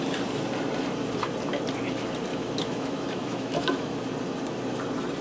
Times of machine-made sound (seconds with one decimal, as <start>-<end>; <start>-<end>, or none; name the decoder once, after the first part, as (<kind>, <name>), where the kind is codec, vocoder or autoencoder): 2.3-4.0 (autoencoder, DAC-VAE)